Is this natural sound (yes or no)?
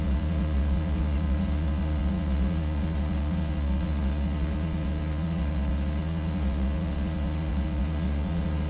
no